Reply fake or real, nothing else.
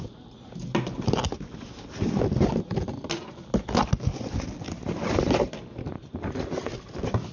real